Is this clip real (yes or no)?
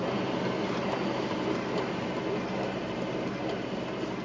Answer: yes